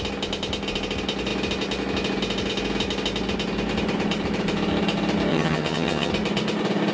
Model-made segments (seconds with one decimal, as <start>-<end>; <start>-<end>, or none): 5.3-6.1